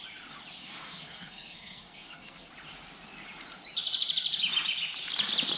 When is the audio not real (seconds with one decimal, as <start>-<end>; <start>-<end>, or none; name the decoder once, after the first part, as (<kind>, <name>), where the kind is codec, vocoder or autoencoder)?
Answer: 0.6-2.5 (codec, SNAC)